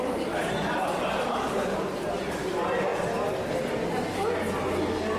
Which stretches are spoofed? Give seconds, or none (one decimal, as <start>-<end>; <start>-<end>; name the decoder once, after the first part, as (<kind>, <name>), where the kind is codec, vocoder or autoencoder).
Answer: none